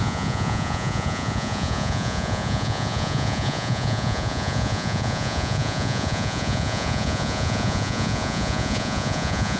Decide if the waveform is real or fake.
fake